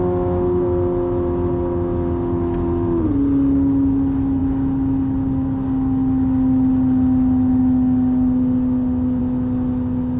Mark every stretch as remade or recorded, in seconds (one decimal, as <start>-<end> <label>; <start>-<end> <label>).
0.0-10.2 recorded